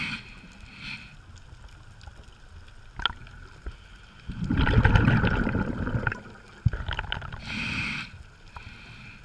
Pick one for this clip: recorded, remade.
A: recorded